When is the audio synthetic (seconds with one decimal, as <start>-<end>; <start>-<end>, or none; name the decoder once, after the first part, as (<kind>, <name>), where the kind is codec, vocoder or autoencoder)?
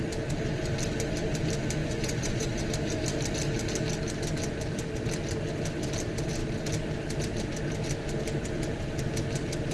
1.8-2.6 (vocoder, Vocos)